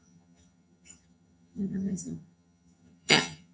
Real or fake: fake